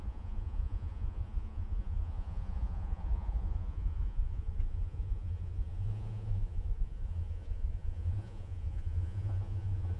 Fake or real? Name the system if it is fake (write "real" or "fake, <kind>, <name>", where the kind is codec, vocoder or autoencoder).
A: fake, vocoder, Vocos